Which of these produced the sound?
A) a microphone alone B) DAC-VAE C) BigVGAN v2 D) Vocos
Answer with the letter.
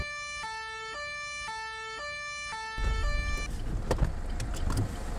A